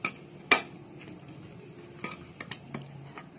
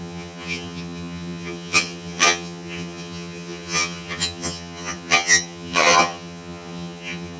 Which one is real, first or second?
first